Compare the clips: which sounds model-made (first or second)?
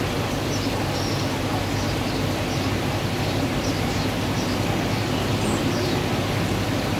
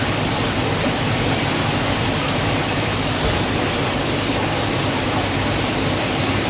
second